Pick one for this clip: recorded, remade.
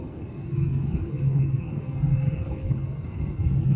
remade